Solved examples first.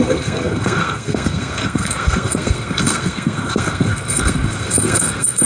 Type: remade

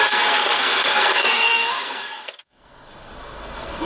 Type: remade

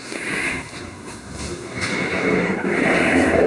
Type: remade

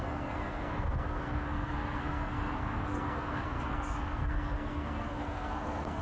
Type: remade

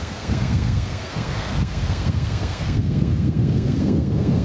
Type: remade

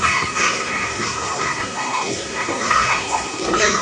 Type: remade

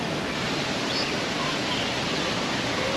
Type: recorded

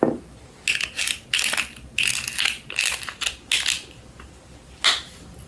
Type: recorded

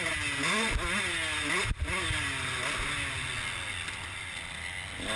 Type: recorded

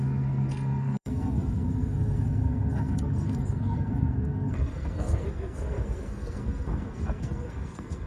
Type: remade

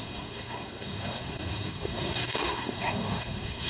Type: remade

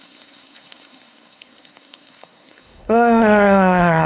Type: remade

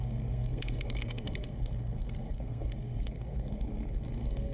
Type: remade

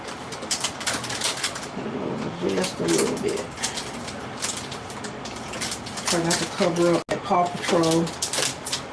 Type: recorded